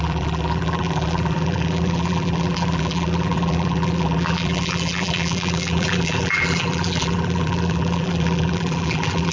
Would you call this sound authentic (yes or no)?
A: no